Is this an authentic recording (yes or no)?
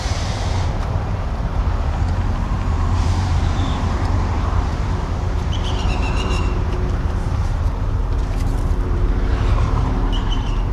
no